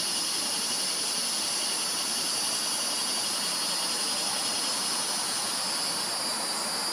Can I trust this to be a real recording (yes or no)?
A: yes